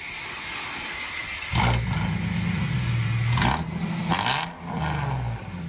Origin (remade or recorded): recorded